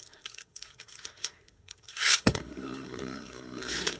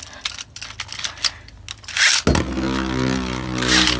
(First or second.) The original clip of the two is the second